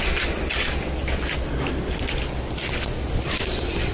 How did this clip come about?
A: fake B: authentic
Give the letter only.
B